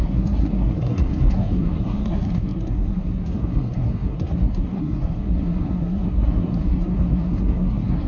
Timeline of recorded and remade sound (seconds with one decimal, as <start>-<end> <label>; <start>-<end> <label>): 0.0-8.1 remade